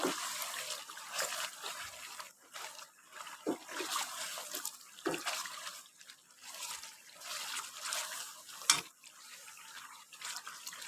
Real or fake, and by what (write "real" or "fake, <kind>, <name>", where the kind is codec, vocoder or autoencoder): real